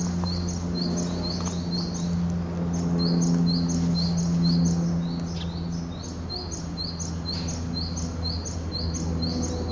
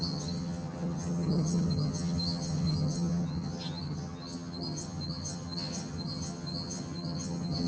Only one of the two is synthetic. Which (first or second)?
second